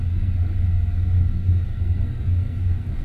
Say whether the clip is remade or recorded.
remade